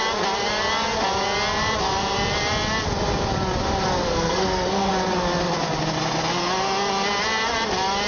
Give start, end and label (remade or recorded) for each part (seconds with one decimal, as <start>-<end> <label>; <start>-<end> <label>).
0.0-4.1 recorded; 4.1-4.9 remade; 4.9-8.1 recorded